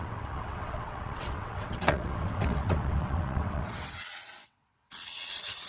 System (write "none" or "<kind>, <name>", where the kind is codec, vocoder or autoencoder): vocoder, WaveNeXt